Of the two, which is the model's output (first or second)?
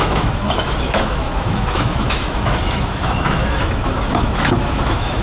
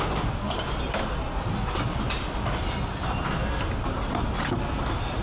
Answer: first